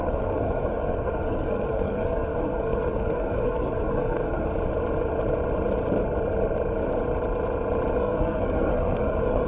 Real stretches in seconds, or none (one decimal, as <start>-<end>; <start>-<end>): 4.5-8.0